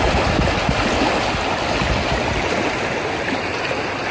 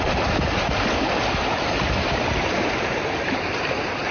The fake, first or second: second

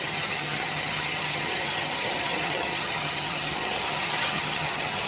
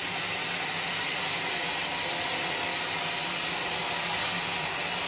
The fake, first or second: first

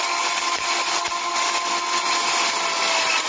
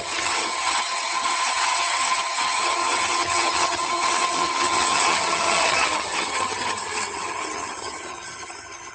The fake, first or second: second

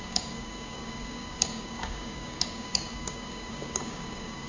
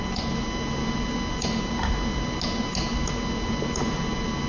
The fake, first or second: first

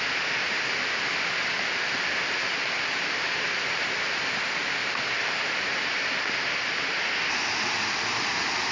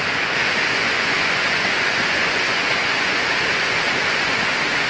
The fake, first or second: second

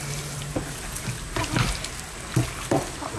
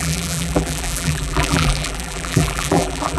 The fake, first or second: second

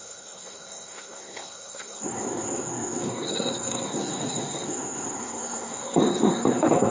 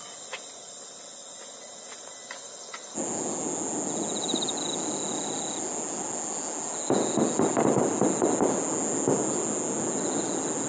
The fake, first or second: first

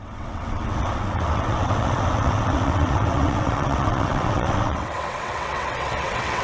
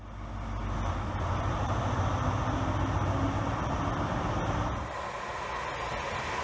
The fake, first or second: first